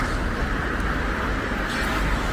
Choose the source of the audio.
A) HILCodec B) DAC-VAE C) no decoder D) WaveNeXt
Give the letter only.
C